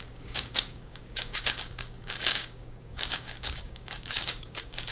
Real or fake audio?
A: fake